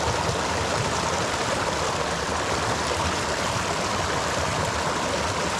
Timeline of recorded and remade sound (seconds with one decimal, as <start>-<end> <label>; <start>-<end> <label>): 0.0-5.6 recorded